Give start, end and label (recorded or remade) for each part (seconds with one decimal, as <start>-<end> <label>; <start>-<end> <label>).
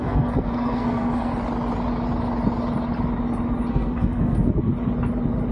0.0-1.3 remade; 1.3-3.7 recorded; 3.7-4.7 remade; 4.7-5.5 recorded